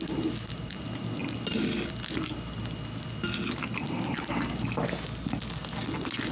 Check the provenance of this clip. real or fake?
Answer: real